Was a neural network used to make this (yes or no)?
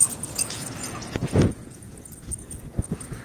yes